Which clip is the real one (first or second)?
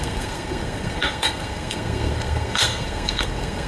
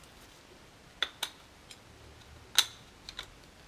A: second